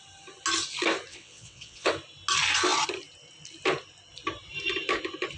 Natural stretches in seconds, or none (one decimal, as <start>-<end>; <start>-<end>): 0.0-1.1; 1.9-5.4